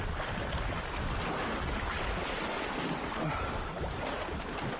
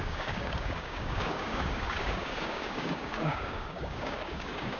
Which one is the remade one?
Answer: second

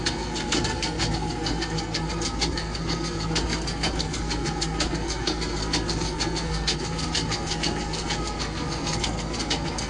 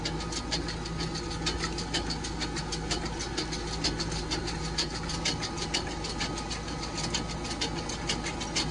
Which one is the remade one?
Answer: first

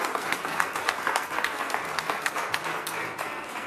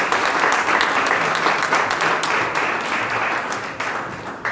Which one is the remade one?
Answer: first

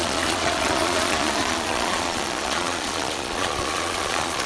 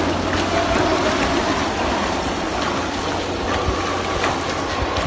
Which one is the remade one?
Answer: first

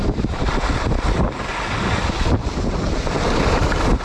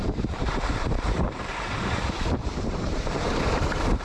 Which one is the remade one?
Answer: second